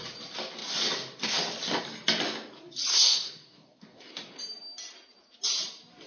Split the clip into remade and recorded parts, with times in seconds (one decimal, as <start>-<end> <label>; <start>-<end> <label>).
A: 0.0-2.9 recorded; 2.9-4.4 remade; 4.4-6.1 recorded